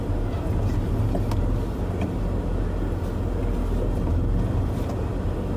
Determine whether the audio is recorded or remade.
recorded